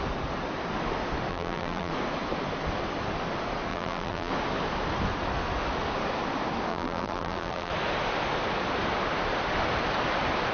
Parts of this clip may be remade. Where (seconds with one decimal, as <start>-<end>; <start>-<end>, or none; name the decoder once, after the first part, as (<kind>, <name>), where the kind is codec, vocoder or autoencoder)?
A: 1.3-1.9 (vocoder, BigVGAN v2); 3.7-4.3; 6.7-7.7